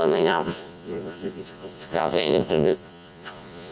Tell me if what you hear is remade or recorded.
remade